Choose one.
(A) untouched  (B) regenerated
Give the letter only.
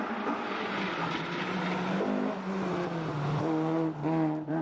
A